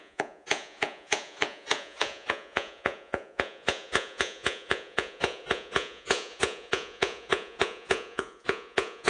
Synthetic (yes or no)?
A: yes